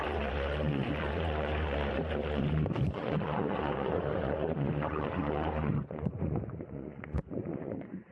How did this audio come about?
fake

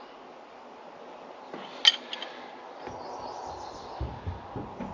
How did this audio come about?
real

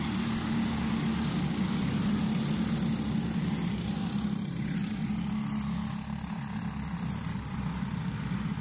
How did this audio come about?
real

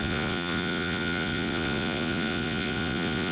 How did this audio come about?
fake